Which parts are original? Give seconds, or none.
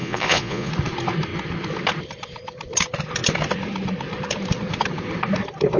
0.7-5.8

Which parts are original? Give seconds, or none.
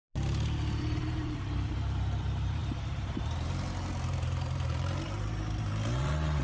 0.0-0.8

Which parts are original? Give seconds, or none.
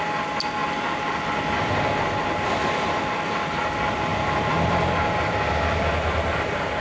0.0-6.8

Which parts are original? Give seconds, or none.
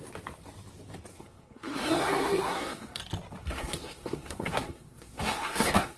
0.0-1.1; 3.0-3.4